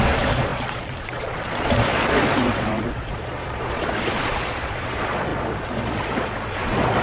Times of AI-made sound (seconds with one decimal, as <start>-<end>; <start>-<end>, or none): 0.0-7.0